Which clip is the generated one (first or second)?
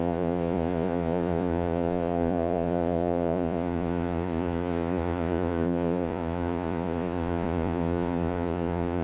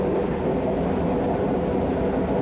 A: first